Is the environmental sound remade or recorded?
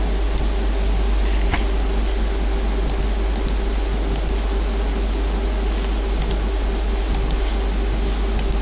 recorded